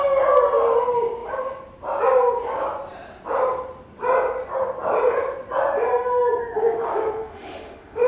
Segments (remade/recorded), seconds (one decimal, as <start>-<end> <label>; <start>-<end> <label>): 0.0-6.4 recorded; 6.4-8.1 remade